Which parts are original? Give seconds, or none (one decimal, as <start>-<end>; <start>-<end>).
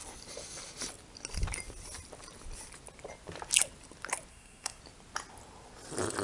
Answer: 0.0-4.3; 4.8-6.2